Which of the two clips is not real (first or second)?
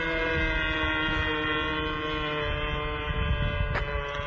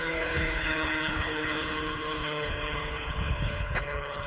second